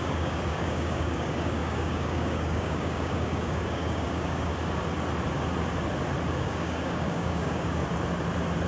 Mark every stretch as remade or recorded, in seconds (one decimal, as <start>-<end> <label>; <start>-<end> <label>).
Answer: 0.0-4.5 remade; 4.5-6.3 recorded; 6.3-7.8 remade; 7.8-8.7 recorded